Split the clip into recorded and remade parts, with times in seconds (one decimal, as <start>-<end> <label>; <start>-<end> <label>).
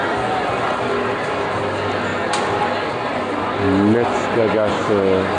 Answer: 0.0-5.4 recorded